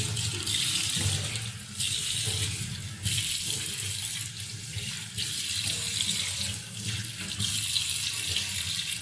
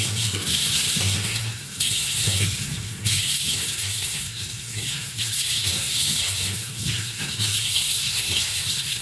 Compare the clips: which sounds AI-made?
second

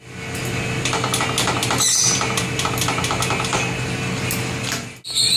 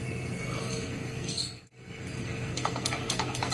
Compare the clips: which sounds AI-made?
second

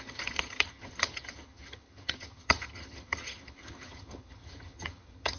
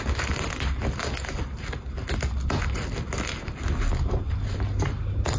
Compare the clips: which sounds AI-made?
first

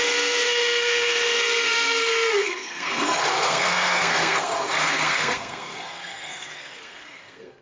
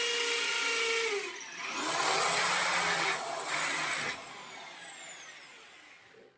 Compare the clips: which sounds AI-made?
first